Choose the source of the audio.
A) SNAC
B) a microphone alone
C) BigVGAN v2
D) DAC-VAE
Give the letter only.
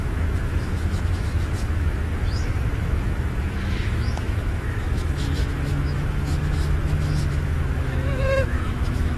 D